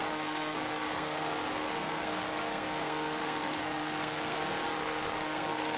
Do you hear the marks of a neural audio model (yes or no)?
yes